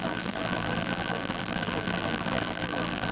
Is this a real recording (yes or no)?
no